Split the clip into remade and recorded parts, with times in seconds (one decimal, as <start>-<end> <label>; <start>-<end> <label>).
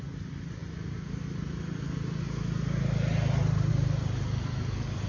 0.0-5.1 recorded